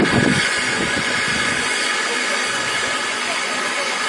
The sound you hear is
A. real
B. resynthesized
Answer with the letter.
B